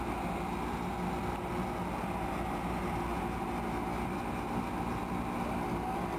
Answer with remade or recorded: recorded